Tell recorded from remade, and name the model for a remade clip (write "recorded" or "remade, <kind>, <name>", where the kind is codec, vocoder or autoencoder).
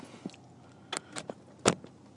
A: recorded